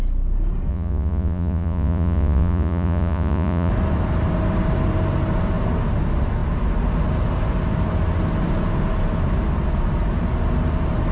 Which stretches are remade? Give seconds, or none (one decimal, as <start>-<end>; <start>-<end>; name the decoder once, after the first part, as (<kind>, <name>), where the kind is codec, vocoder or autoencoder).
0.7-3.7 (vocoder, Vocos)